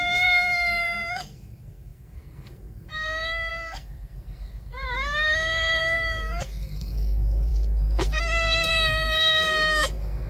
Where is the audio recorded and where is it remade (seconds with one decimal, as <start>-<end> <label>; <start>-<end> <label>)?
0.0-10.3 remade